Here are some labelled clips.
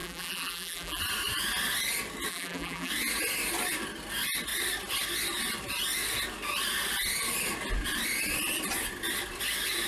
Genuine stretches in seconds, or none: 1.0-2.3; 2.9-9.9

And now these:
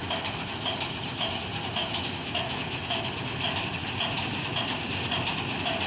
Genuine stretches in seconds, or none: 0.0-1.8; 3.1-5.9

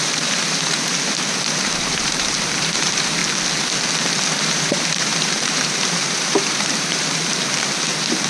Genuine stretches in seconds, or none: 3.2-4.3

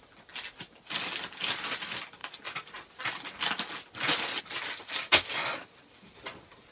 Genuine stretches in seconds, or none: 0.0-6.7

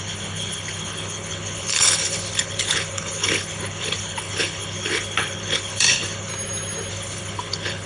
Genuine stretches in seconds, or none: 6.3-6.9

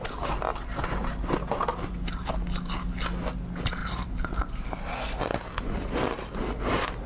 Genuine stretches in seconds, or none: 0.0-1.7; 2.3-3.8; 4.9-7.1

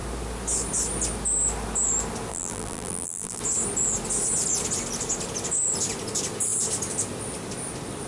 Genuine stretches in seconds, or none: 0.0-2.3; 3.4-8.1